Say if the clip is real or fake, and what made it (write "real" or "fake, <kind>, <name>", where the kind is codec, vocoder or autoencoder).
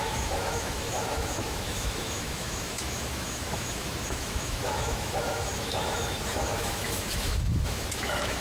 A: fake, autoencoder, DAC-VAE